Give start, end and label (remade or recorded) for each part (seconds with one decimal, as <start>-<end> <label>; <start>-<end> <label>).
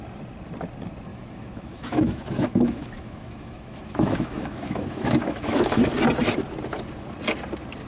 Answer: 0.0-1.1 recorded; 1.1-5.8 remade; 5.8-7.9 recorded